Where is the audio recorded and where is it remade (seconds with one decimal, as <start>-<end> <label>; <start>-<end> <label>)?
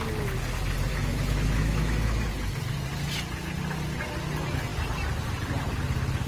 0.0-0.9 recorded; 0.9-2.3 remade; 2.3-6.3 recorded